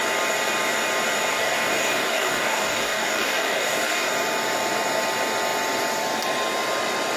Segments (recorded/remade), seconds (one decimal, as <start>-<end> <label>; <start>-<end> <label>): 0.0-1.3 recorded; 1.3-4.1 remade; 4.1-7.2 recorded